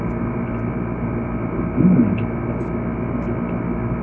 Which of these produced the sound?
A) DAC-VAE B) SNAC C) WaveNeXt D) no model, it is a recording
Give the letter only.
D